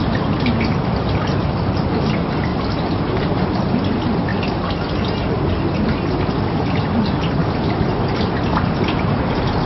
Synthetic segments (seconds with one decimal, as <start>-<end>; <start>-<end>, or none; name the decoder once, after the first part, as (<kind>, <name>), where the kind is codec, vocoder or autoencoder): none